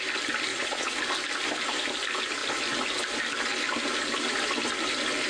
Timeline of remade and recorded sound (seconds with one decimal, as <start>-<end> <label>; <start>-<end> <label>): 0.0-0.5 recorded; 0.5-1.0 remade; 1.0-5.3 recorded